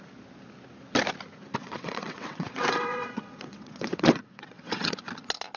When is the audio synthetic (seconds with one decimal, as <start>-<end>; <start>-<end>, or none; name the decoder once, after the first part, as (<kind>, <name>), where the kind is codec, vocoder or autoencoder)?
1.6-5.0 (vocoder, WaveNeXt)